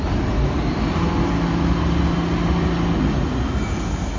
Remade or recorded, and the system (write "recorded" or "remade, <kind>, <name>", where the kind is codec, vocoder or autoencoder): recorded